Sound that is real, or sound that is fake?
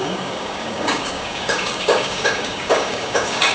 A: fake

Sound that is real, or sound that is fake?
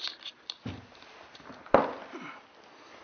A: real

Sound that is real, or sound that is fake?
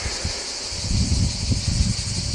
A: real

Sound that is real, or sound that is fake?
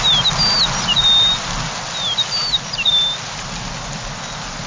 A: real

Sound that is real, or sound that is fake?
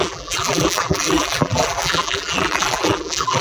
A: fake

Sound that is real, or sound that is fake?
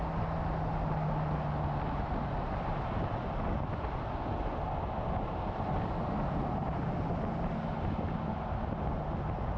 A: real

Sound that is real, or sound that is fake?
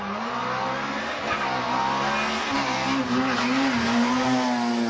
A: real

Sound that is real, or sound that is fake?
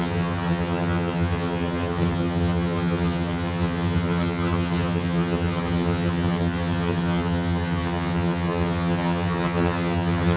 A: fake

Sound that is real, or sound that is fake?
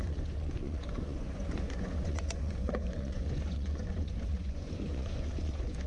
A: fake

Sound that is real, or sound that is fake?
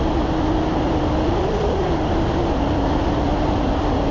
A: real